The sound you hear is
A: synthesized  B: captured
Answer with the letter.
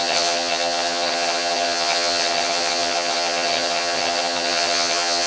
A